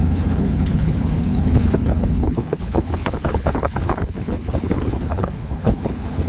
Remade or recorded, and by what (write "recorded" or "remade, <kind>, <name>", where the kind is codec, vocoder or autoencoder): remade, codec, HILCodec